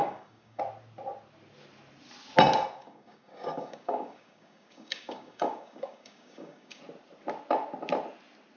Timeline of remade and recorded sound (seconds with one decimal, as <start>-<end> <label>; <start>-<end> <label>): 0.0-0.6 remade; 0.6-2.8 recorded; 2.8-6.8 remade; 6.8-8.6 recorded